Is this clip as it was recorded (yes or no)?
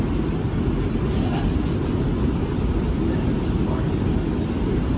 yes